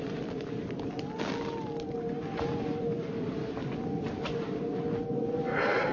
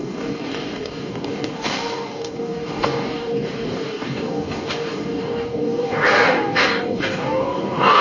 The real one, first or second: first